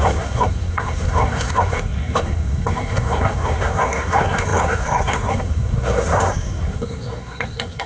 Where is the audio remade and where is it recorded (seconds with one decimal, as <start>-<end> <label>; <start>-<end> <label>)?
0.0-7.9 remade